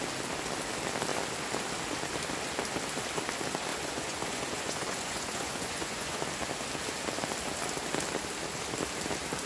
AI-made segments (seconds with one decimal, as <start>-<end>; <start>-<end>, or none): 3.7-6.2